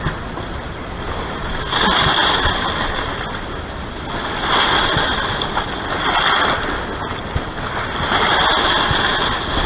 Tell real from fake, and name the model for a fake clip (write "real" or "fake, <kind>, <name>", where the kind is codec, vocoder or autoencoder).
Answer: real